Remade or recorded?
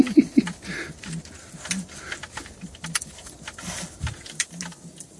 recorded